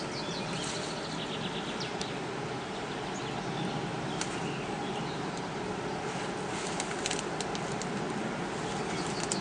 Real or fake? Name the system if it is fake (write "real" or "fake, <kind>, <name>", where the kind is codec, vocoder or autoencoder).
real